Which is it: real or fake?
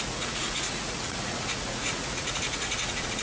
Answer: fake